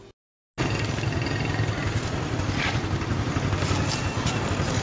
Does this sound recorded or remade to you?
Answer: recorded